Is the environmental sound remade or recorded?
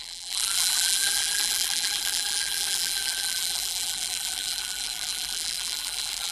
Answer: remade